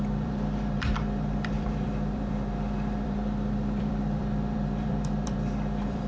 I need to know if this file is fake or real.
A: fake